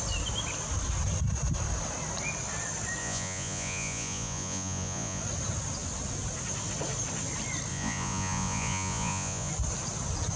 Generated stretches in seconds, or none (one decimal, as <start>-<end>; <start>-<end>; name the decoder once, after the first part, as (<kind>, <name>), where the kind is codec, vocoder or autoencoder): 3.0-5.2 (vocoder, Vocos); 7.7-9.5